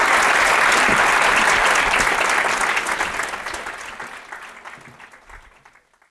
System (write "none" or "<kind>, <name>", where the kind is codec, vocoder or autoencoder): none